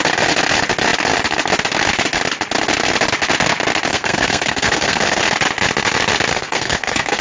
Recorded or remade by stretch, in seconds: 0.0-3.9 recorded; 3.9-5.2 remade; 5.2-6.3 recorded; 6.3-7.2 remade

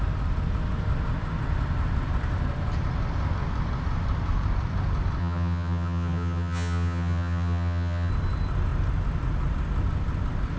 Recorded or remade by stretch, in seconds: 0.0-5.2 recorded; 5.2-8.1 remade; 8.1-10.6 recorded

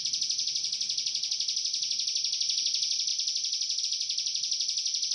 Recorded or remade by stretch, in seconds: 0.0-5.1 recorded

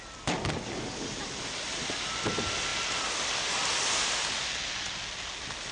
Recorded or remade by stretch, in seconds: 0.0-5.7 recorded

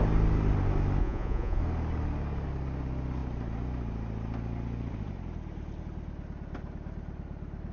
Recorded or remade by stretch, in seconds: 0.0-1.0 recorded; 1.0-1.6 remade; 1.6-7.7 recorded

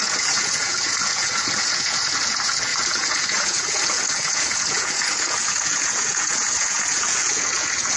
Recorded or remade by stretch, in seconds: 0.0-8.0 remade